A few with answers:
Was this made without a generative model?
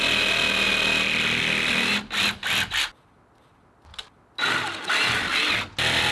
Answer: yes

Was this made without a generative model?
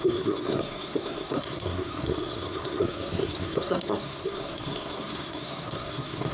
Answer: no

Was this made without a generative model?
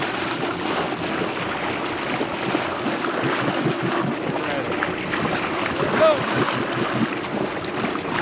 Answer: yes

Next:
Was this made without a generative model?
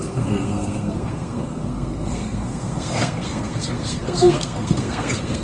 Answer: no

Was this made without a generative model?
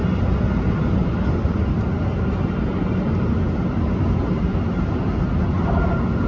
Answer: yes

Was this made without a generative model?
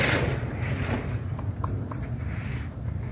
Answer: yes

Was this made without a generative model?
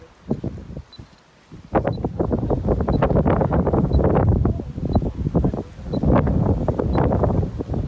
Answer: yes